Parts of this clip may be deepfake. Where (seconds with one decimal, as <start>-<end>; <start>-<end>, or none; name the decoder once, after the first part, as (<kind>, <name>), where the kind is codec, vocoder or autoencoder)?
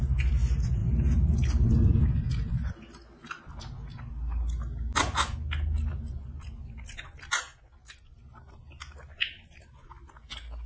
none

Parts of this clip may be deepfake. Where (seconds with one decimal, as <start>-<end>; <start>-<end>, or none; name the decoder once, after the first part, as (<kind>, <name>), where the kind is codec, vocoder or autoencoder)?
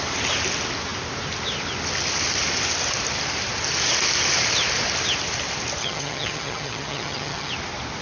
5.8-7.5 (vocoder, HiFi-GAN)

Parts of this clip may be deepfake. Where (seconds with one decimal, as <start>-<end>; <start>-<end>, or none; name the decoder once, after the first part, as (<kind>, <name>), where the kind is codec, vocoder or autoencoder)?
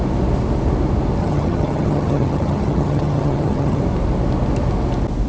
1.2-3.8 (vocoder, HiFi-GAN)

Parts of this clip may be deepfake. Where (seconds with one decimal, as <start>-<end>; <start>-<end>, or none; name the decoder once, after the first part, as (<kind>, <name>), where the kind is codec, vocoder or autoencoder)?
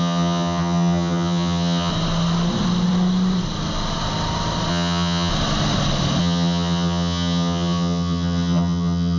0.0-1.9 (vocoder, HiFi-GAN); 4.7-5.3; 6.2-9.2